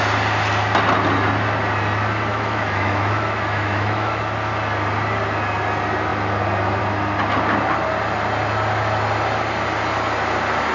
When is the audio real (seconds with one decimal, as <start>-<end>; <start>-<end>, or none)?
0.0-2.3; 4.2-10.7